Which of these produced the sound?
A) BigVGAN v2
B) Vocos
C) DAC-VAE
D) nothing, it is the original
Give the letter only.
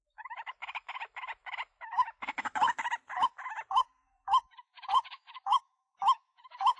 C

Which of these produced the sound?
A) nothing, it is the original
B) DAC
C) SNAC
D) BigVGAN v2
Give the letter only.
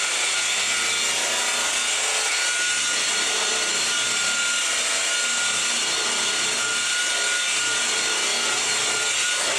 A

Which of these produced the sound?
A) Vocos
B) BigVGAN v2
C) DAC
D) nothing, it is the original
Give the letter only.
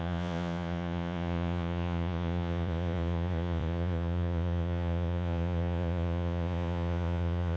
A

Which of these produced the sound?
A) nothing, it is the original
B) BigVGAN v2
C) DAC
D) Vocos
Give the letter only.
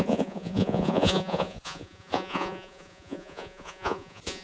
D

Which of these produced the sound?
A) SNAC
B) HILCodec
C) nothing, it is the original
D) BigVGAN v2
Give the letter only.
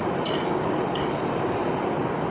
D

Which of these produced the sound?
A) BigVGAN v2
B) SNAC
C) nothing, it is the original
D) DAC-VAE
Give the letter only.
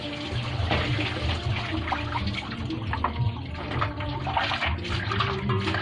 C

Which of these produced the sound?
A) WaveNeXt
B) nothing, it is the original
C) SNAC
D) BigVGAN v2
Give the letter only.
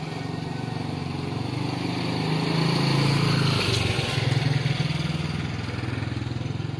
B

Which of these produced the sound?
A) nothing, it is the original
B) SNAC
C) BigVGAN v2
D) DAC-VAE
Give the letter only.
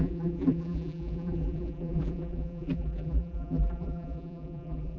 C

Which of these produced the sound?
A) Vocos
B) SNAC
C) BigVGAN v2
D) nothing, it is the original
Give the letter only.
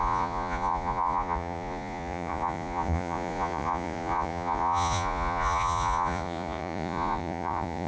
A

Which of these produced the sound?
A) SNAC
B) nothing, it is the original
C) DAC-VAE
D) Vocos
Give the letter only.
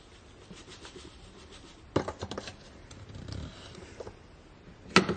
B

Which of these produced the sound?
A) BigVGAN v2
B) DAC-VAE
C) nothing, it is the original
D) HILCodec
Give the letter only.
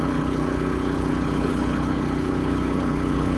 D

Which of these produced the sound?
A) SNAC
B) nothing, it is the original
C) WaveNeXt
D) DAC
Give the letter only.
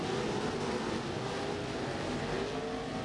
B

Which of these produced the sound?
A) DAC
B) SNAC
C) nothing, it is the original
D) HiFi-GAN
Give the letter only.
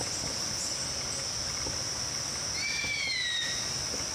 C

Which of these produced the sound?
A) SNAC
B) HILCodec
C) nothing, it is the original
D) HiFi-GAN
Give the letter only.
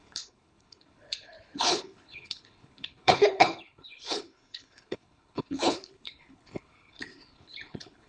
B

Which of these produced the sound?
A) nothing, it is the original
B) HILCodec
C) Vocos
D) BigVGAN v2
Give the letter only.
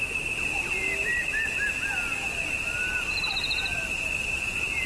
A